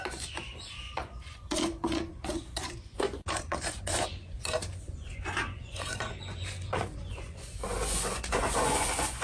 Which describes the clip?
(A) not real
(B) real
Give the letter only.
A